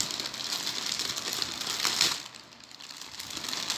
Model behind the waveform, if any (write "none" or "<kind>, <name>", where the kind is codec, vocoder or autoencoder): vocoder, BigVGAN v2